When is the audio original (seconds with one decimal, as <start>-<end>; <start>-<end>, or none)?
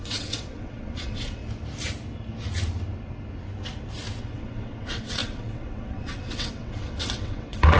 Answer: 1.4-4.2